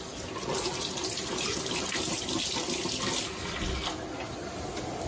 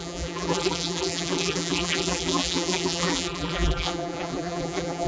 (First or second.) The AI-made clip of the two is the second